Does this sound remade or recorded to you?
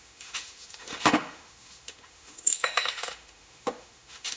remade